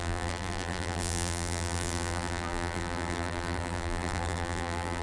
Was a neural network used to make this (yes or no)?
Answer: yes